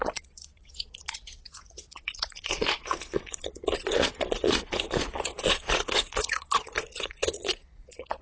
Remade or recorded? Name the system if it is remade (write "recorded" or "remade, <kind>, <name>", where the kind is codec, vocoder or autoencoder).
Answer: remade, vocoder, Vocos